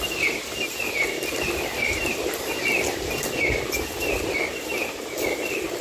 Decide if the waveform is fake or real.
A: real